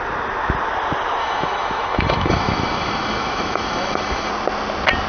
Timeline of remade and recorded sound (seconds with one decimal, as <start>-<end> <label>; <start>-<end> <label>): 0.0-1.2 recorded; 1.2-4.3 remade; 4.3-5.1 recorded